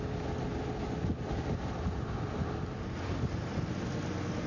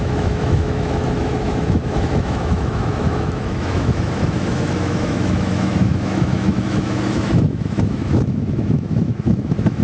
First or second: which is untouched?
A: first